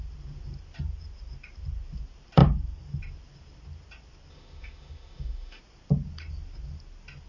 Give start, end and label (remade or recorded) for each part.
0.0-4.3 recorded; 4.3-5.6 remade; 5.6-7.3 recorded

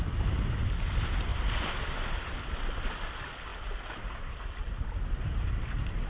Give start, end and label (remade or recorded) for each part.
0.0-6.1 recorded

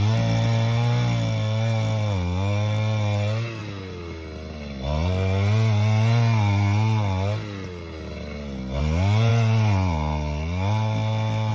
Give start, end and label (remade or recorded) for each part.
0.0-11.5 recorded

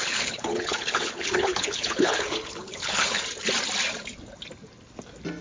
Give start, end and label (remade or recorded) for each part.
0.0-3.2 remade; 3.2-5.4 recorded